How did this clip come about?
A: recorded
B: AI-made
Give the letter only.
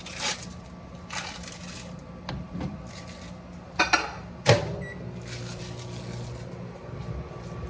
A